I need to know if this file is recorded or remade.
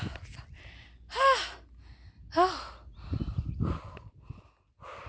recorded